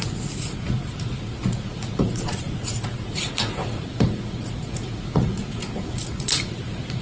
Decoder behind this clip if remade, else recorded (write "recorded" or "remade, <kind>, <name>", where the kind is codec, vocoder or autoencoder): remade, vocoder, Vocos